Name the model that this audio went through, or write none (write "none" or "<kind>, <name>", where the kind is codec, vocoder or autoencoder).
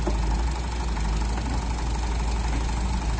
none